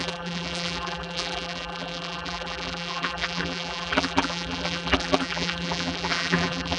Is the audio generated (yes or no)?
yes